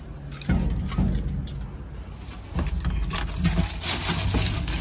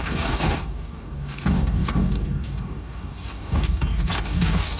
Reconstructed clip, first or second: second